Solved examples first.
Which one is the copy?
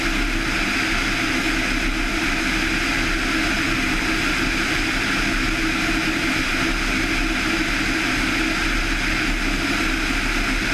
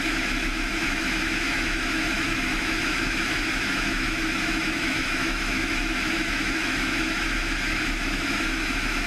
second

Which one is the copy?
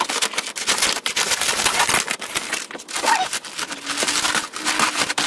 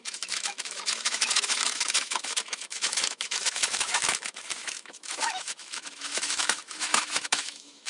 second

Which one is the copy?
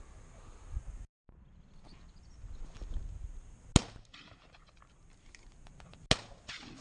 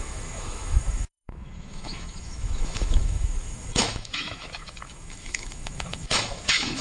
second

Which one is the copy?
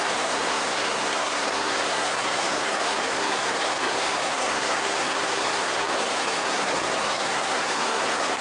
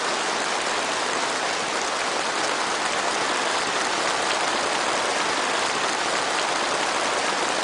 first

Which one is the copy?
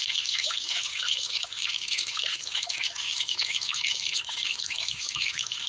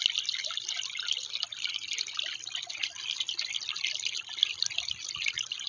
first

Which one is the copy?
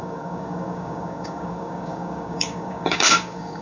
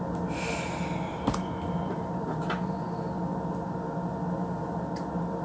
first